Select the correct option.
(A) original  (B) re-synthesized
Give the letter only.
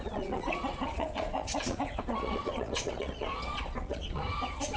B